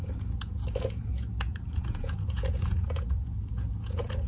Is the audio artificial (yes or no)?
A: yes